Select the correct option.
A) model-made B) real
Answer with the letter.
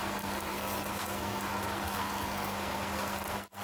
A